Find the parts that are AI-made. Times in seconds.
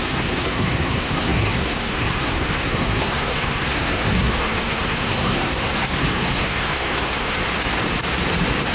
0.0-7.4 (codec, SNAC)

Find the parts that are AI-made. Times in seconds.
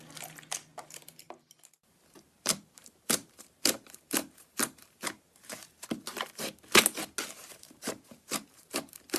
0.7-5.6 (vocoder, BigVGAN v2); 7.4-9.2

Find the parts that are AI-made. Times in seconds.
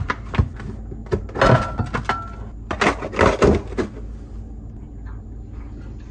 none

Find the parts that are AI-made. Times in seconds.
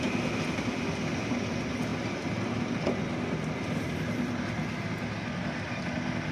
none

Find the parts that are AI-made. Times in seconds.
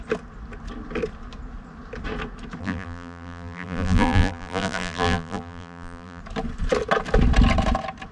2.6-6.2 (vocoder, BigVGAN v2)